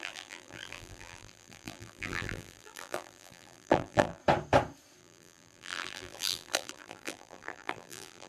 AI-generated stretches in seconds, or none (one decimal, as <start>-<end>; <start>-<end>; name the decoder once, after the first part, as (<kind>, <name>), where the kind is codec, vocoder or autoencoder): 0.0-4.2 (vocoder, BigVGAN v2); 5.0-8.3